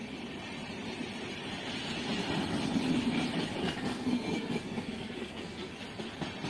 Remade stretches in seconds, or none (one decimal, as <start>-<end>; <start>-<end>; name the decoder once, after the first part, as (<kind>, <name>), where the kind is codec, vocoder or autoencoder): 3.6-5.8 (codec, SNAC)